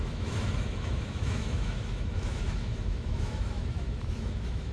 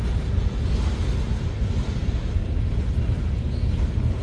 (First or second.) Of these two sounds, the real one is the second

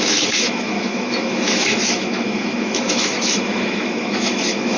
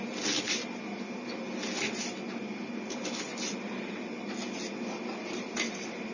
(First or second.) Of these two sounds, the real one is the second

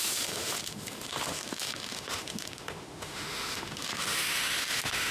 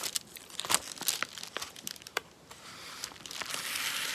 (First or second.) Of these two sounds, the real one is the second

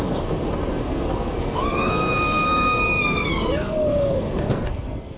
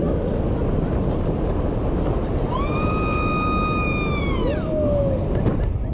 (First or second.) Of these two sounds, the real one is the second